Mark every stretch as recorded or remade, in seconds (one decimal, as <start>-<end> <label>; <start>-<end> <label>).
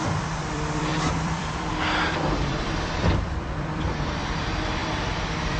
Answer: 0.0-5.6 remade